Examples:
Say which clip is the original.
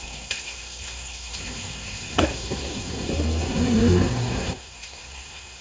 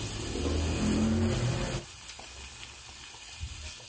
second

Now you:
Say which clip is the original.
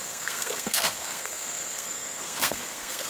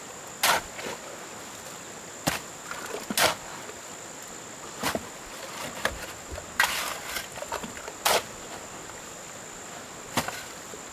second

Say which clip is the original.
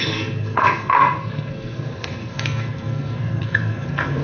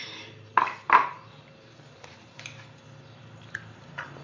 second